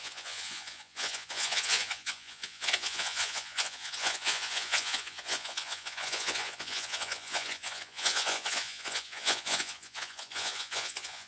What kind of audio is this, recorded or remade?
remade